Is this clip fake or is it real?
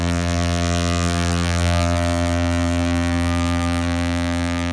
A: fake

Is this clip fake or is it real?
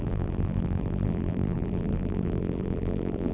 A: fake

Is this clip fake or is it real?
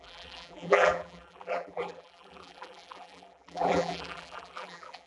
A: fake